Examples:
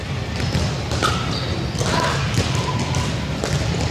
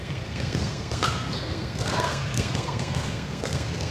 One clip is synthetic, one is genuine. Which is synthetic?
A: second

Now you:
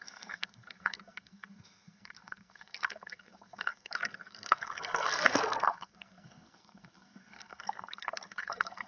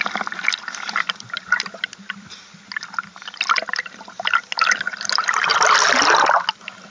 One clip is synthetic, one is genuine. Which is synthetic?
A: first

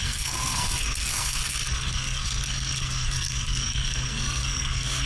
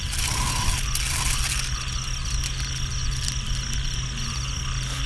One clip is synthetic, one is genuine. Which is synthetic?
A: first